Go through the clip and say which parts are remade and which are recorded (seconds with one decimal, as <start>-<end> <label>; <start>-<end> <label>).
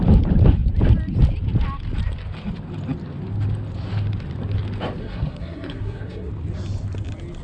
0.0-5.0 recorded; 5.0-6.3 remade; 6.3-7.4 recorded